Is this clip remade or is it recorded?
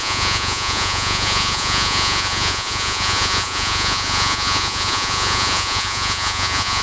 remade